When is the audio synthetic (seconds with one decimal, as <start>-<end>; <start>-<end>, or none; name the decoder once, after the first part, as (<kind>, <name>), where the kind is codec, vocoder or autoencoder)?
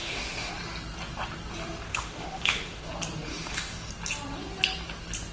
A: 0.0-0.5 (autoencoder, DAC-VAE); 1.9-2.9; 3.3-3.9